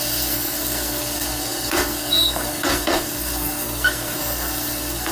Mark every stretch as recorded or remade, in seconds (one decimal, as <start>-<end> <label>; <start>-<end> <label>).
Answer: 0.0-5.1 remade